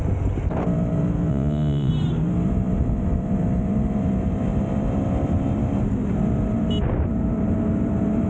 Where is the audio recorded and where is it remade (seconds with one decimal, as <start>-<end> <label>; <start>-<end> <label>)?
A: 0.0-1.3 recorded; 1.3-1.9 remade; 1.9-8.3 recorded